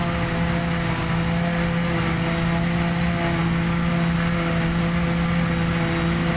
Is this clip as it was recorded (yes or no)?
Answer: yes